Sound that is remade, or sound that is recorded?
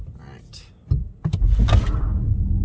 recorded